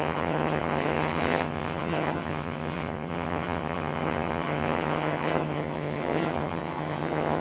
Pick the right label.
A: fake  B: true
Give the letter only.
A